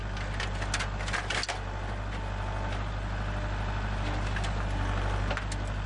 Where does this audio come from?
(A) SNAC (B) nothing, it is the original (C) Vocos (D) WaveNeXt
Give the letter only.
B